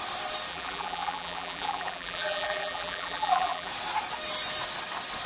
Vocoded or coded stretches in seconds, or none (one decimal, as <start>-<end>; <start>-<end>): 0.5-3.7